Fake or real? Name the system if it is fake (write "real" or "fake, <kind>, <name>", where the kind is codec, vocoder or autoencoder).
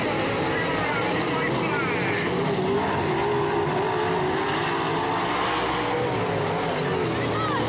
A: real